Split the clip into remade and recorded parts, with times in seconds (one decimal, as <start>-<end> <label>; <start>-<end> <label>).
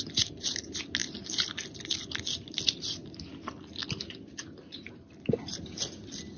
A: 0.0-6.4 recorded